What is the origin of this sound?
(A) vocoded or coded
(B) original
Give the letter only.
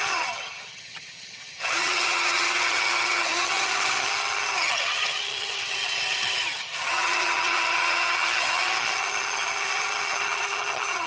A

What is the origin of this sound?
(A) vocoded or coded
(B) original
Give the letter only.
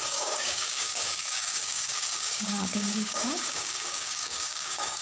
A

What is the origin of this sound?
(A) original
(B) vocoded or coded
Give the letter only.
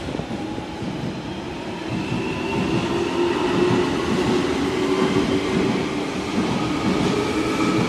A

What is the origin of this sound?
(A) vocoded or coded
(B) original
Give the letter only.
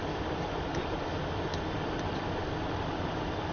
B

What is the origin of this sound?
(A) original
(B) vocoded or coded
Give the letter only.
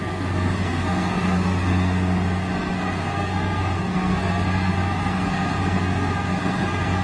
B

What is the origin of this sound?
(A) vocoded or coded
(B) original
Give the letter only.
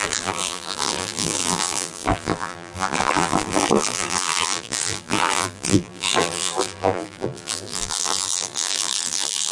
A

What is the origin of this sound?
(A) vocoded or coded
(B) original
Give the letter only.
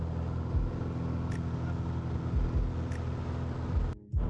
B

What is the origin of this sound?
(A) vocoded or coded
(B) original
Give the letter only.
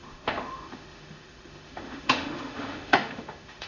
A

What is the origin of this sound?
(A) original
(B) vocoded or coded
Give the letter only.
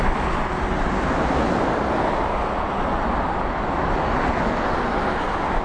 A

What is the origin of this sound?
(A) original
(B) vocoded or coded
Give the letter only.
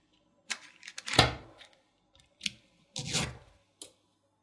A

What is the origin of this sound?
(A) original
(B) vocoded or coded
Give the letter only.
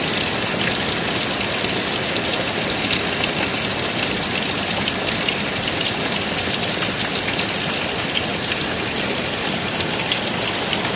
A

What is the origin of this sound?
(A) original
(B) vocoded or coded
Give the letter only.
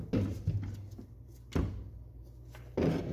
A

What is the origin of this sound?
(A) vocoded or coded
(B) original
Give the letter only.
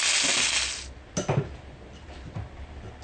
B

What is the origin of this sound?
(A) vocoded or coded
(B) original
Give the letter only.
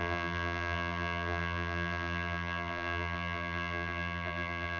A